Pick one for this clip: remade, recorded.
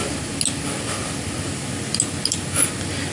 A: recorded